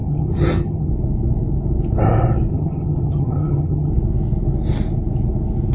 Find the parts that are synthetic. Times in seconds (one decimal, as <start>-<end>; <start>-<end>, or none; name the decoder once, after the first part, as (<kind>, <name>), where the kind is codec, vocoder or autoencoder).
0.0-0.9 (vocoder, HiFi-GAN); 2.5-3.9